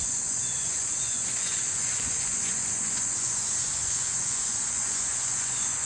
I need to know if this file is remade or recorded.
remade